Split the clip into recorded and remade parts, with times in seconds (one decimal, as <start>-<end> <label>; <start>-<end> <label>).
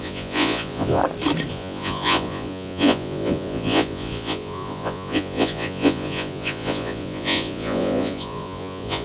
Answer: 0.0-1.0 remade; 1.0-1.5 recorded; 1.5-9.0 remade